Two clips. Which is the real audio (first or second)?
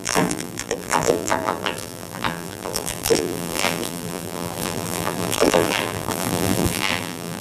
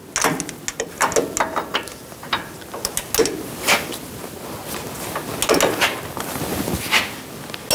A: second